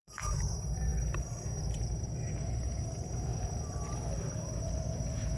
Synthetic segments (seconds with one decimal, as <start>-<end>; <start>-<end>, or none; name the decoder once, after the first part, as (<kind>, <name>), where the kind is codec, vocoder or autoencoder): 0.0-0.9 (vocoder, BigVGAN v2); 1.6-3.3; 4.7-5.4